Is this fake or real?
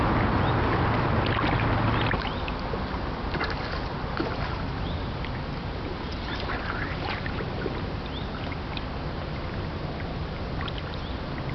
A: real